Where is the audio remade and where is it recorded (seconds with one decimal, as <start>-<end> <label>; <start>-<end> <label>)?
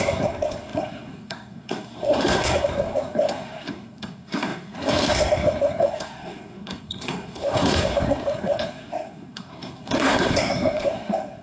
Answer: 0.0-11.4 remade